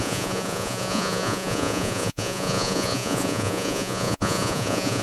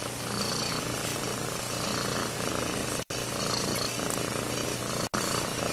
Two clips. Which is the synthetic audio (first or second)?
first